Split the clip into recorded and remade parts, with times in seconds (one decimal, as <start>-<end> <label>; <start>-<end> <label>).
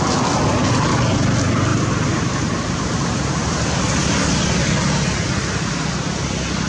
0.0-1.7 recorded; 1.7-4.9 remade; 4.9-6.7 recorded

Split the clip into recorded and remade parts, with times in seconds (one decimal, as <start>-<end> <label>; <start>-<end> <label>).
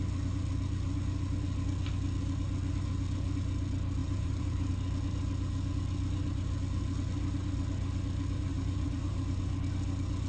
0.0-4.0 recorded; 4.0-4.7 remade; 4.7-8.5 recorded; 8.5-9.4 remade; 9.4-10.3 recorded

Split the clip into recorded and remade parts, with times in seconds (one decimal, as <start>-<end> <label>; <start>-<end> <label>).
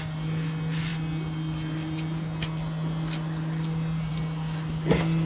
0.0-5.3 recorded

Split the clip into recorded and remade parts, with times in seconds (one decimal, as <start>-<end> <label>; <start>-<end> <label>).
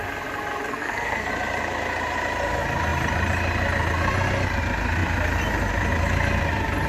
0.0-0.7 recorded; 0.7-1.3 remade; 1.3-6.9 recorded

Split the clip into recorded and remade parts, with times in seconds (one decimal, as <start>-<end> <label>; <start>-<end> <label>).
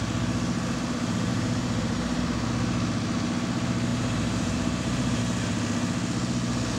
0.0-1.3 recorded; 1.3-2.2 remade; 2.2-3.9 recorded; 3.9-5.2 remade; 5.2-6.8 recorded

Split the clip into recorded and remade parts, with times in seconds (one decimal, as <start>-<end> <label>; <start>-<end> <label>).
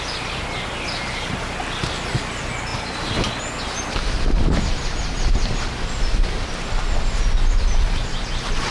0.0-8.7 recorded